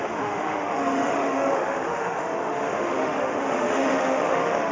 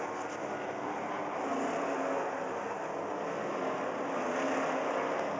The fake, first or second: first